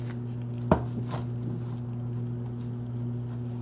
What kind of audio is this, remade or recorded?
recorded